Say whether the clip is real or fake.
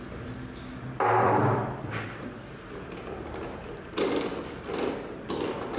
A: fake